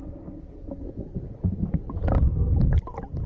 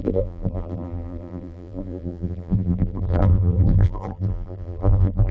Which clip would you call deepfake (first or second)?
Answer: second